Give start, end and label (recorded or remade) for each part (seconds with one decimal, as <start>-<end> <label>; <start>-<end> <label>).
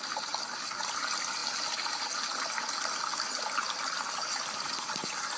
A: 0.0-5.4 recorded